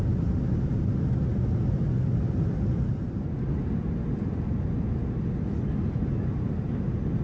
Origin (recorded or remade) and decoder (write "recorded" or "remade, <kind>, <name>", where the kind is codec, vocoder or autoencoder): recorded